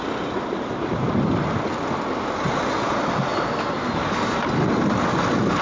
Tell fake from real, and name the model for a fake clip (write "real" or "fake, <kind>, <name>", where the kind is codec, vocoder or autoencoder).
real